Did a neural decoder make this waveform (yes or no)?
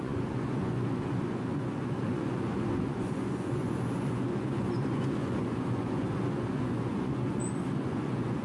yes